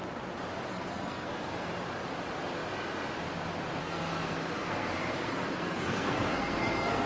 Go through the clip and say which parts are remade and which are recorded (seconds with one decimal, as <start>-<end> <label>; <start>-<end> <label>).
0.0-0.7 recorded; 0.7-1.7 remade; 1.7-3.8 recorded; 3.8-7.1 remade